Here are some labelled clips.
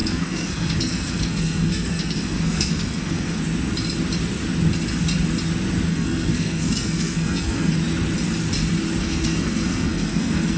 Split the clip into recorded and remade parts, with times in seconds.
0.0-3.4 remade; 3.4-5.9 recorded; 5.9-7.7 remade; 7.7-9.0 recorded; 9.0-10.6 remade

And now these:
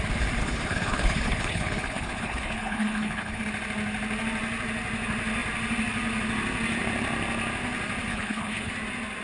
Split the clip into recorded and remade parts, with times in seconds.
0.0-0.4 recorded; 0.4-3.4 remade; 3.4-8.1 recorded; 8.1-8.7 remade; 8.7-9.2 recorded

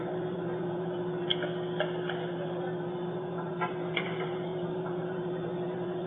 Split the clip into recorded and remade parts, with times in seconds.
0.0-1.3 remade; 1.3-2.3 recorded; 2.3-6.1 remade

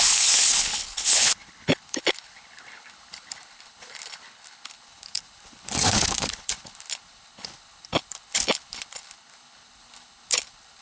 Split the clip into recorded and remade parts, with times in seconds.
0.0-10.8 remade